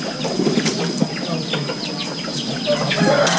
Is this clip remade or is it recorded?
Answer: recorded